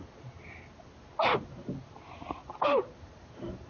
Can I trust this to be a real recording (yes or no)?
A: yes